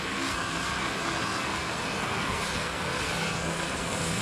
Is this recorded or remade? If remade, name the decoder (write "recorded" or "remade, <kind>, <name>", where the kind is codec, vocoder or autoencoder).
remade, codec, SNAC